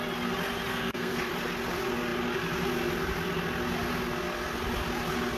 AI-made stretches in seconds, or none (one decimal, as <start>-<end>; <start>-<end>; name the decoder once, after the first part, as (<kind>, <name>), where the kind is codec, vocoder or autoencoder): 0.7-1.2 (codec, SNAC)